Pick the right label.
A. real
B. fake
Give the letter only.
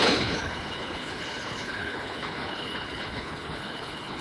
B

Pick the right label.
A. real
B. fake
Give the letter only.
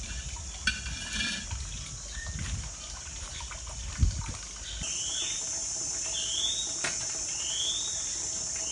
A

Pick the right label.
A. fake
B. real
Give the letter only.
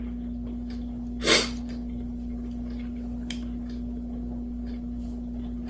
B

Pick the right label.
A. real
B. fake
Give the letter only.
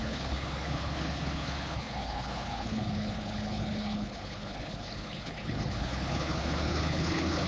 B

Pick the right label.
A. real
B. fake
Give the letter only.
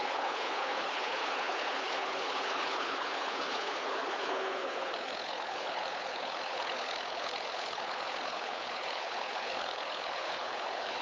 B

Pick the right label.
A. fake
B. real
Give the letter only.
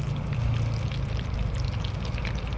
B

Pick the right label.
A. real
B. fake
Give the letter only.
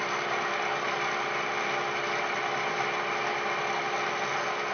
A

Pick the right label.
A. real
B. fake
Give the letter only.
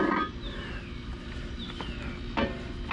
A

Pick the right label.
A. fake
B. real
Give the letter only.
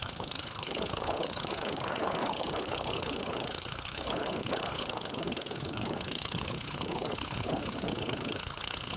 A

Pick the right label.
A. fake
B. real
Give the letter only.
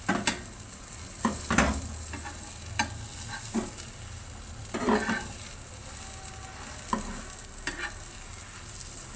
B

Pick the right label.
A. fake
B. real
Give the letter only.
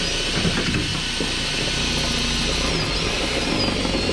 B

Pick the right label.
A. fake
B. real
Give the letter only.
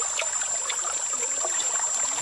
B